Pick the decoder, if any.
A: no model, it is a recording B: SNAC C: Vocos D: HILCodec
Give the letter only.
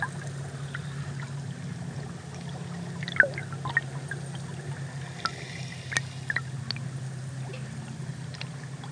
A